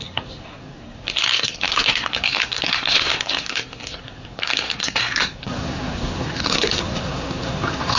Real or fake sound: fake